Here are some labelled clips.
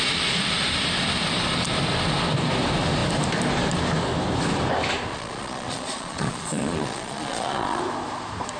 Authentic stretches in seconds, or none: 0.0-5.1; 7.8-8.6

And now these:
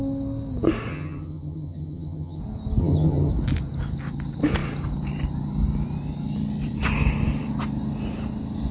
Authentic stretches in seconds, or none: 0.0-0.9; 2.4-2.8; 3.3-8.7

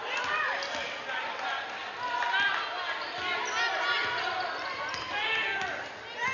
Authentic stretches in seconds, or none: 0.0-6.3

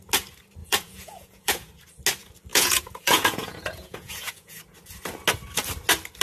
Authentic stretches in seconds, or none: 0.0-0.6; 1.7-2.5; 4.6-6.2

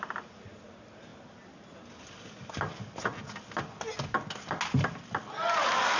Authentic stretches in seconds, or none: 0.0-6.0

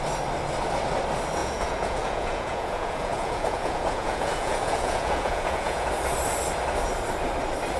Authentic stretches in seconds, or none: 0.0-1.4; 5.9-7.8

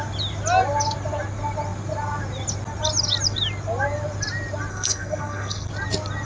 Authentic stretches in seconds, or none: 0.0-4.7; 5.7-6.2

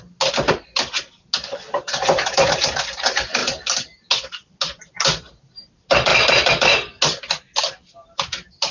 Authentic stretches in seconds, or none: 0.0-8.7